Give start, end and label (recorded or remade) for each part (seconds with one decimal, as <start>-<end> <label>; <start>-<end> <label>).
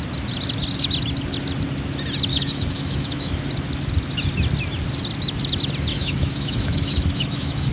0.0-2.3 recorded; 2.3-3.4 remade; 3.4-5.9 recorded; 5.9-7.7 remade